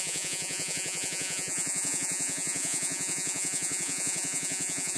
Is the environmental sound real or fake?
fake